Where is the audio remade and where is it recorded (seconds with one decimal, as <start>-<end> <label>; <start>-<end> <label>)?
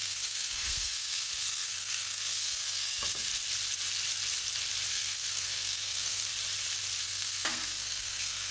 0.0-3.3 remade; 3.3-4.9 recorded; 4.9-6.3 remade; 6.3-7.0 recorded; 7.0-8.5 remade